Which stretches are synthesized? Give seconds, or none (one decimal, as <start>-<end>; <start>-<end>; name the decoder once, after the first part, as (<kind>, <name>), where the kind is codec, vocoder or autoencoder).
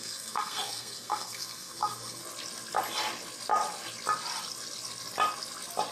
0.0-2.2 (codec, SNAC)